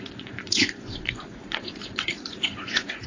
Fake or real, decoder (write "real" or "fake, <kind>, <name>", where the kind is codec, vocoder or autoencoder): fake, vocoder, Vocos